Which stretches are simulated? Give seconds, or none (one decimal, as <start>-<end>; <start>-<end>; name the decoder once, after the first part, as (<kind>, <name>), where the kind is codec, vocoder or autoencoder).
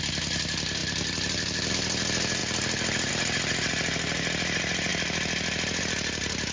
none